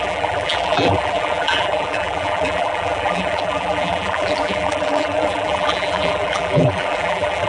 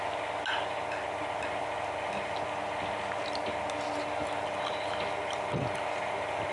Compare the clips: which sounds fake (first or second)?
first